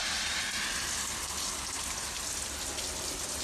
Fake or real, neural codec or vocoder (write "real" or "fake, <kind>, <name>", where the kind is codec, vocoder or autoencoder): real